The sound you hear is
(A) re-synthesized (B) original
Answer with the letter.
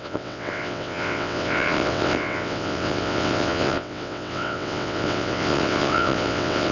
A